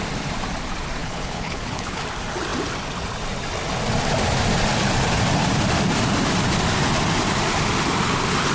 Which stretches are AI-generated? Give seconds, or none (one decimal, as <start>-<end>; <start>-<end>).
1.0-2.0